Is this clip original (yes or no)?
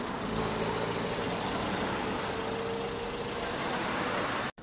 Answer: yes